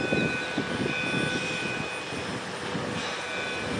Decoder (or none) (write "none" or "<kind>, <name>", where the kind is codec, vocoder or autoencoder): none